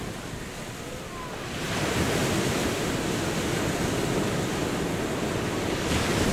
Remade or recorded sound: recorded